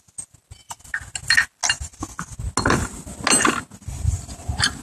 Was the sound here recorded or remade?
recorded